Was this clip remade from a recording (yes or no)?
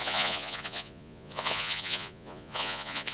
yes